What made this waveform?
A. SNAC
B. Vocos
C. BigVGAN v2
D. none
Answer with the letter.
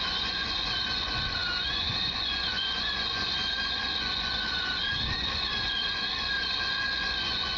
B